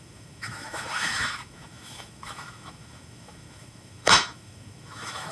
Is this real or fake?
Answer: fake